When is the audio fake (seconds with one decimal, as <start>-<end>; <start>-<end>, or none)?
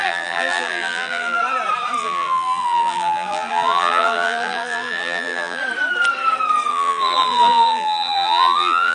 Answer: 0.0-1.4; 2.0-5.6; 6.7-8.9